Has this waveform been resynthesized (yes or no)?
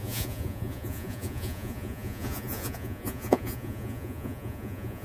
yes